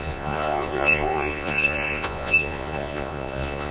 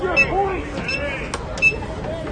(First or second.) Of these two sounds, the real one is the second